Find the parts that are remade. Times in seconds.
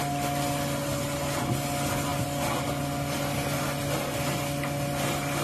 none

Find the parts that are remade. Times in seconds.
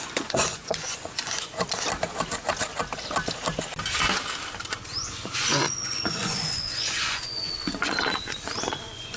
0.0-1.5 (vocoder, Vocos); 4.7-9.2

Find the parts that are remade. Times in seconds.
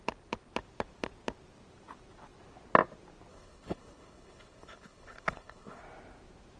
3.3-5.8 (codec, HILCodec)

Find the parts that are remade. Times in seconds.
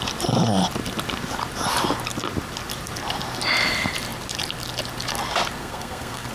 5.6-6.3 (codec, SNAC)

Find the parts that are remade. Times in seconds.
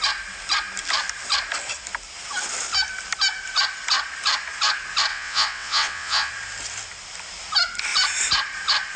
5.1-6.3 (vocoder, WaveNeXt)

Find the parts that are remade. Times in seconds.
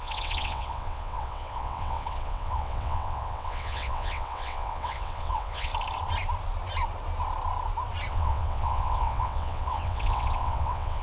0.0-5.7 (vocoder, WaveNeXt); 8.1-11.0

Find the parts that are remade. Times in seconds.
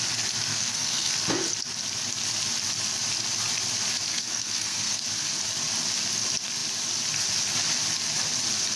0.5-1.1 (codec, SNAC); 4.1-5.0